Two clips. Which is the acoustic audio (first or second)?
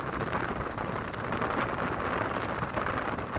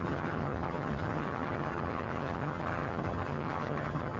first